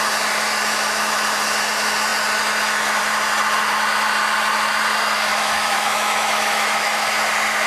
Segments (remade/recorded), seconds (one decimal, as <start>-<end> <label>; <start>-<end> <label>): 0.0-5.3 recorded; 5.3-7.1 remade; 7.1-7.7 recorded